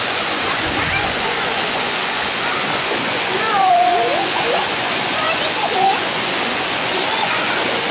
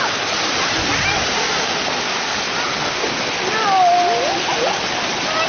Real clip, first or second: second